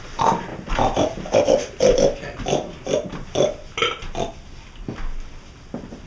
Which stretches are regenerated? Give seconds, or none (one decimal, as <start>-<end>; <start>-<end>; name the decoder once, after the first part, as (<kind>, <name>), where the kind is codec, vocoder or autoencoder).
0.5-1.4 (vocoder, BigVGAN v2)